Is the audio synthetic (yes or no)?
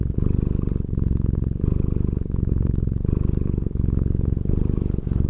yes